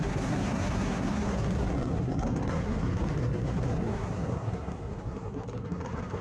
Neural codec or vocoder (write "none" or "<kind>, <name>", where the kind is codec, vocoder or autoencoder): codec, SNAC